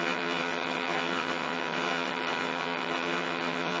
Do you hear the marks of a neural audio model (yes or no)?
yes